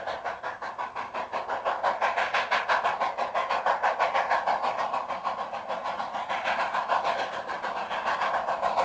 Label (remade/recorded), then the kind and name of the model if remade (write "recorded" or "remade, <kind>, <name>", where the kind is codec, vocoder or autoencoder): recorded